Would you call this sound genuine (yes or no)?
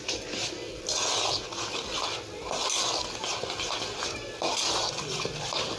yes